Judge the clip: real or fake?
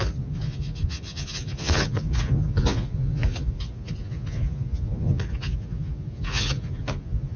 fake